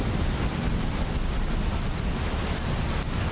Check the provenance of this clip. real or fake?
real